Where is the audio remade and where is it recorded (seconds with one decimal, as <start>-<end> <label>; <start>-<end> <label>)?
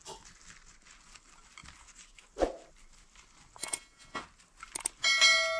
0.0-3.6 recorded; 3.6-4.2 remade; 4.2-5.6 recorded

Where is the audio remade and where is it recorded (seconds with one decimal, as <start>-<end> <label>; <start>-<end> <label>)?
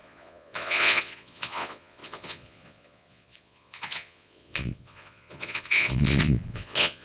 0.0-7.0 remade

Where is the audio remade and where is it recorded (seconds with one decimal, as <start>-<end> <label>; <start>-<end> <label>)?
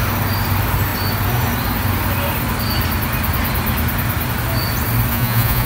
0.0-5.1 recorded; 5.1-5.7 remade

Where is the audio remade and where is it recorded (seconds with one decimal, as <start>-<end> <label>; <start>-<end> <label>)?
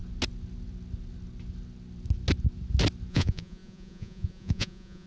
0.0-3.1 recorded; 3.1-5.1 remade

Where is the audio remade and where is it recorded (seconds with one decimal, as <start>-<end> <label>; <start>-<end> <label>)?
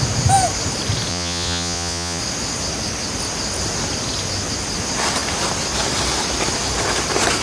0.0-1.1 recorded; 1.1-2.2 remade; 2.2-7.4 recorded